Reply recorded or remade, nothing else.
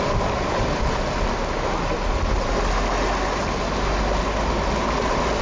recorded